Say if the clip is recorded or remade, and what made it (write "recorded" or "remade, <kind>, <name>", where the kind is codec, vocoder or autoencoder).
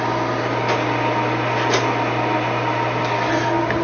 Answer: recorded